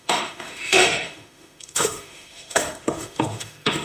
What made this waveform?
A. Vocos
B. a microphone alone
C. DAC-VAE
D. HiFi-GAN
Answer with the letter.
C